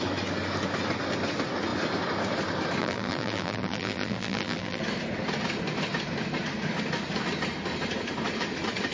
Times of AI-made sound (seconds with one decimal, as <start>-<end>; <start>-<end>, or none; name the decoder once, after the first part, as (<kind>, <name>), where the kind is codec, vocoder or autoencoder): 2.8-4.8 (vocoder, BigVGAN v2)